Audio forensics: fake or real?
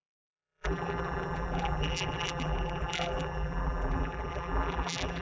fake